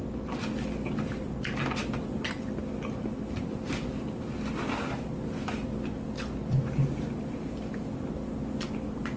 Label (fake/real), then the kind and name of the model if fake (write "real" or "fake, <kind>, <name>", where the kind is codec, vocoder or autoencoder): real